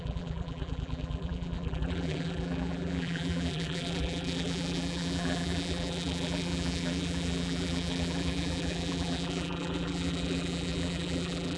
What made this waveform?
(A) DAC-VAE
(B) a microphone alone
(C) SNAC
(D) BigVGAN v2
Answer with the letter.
D